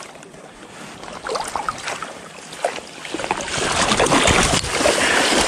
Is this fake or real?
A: real